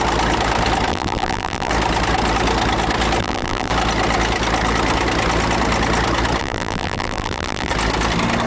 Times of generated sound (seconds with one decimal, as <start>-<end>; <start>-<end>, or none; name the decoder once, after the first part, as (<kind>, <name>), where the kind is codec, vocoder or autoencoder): 0.9-1.7 (vocoder, BigVGAN v2); 3.2-3.7; 6.4-7.7